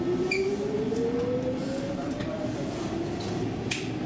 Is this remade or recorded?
recorded